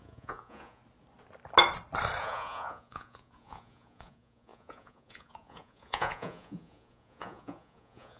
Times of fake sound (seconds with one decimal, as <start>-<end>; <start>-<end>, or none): 0.0-0.8; 2.2-8.2